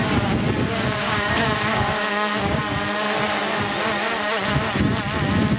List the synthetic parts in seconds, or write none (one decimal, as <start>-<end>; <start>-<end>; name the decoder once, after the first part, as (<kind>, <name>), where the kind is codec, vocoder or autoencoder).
1.0-2.6 (codec, DAC)